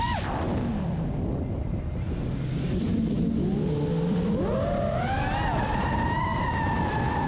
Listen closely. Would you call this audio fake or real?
real